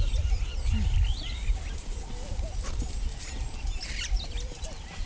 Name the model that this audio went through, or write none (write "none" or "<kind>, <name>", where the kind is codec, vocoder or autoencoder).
none